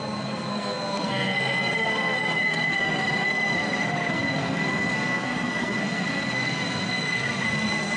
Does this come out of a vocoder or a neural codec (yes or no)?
yes